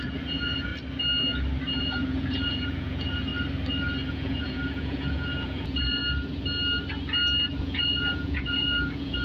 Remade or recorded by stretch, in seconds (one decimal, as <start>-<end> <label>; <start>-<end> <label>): 0.0-0.7 remade; 0.7-1.8 recorded; 1.8-3.3 remade; 3.3-4.1 recorded; 4.1-6.0 remade; 6.0-7.6 recorded; 7.6-9.2 remade